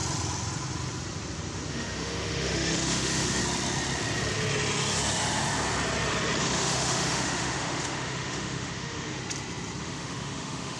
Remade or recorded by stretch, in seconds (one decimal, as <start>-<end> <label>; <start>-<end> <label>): 0.0-1.7 recorded; 1.7-3.4 remade; 3.4-6.4 recorded; 6.4-9.2 remade; 9.2-9.8 recorded; 9.8-10.8 remade